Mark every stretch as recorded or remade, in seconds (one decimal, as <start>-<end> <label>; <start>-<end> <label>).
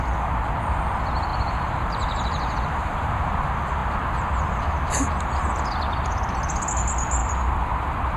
0.0-1.3 recorded; 1.3-3.2 remade; 3.2-8.2 recorded